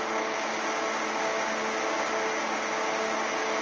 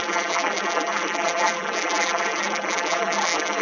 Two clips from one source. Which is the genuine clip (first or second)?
first